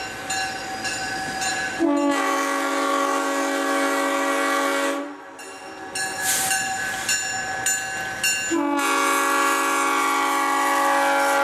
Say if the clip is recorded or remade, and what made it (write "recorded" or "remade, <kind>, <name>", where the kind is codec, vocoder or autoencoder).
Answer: recorded